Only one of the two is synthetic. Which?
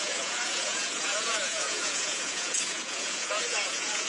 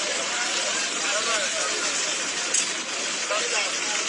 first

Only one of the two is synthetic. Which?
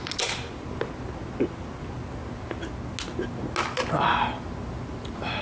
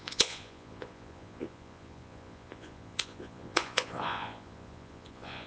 second